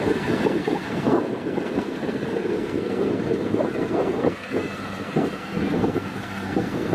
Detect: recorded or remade remade